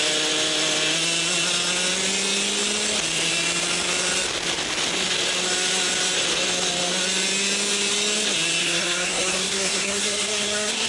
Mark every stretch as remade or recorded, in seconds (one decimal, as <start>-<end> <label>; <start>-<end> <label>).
0.0-8.6 recorded; 8.6-10.9 remade